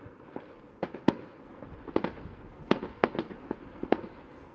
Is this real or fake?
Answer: fake